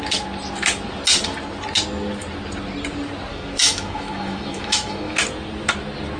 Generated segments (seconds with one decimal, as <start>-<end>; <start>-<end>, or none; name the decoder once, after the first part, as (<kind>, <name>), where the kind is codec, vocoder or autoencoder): 3.3-5.2 (autoencoder, DAC-VAE)